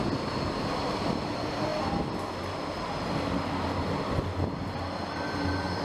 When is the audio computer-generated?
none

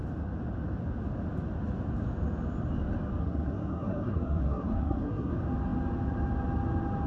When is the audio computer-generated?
3.2-5.3

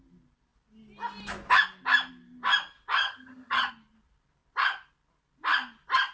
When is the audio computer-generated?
3.0-3.7

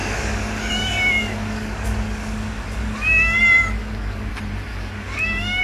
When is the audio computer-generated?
0.0-3.4; 3.8-4.3; 4.7-5.6

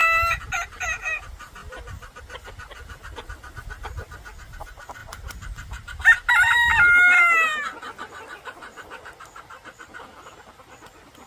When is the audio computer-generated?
none